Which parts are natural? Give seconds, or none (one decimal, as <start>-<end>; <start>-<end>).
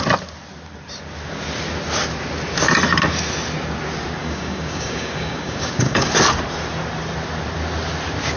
0.0-4.2; 6.1-8.4